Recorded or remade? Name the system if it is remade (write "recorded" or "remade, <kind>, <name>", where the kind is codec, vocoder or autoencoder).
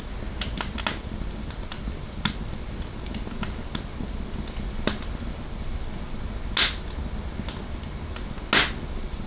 recorded